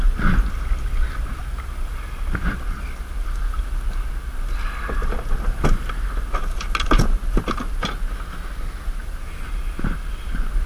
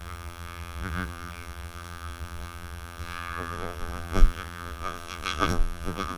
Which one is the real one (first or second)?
first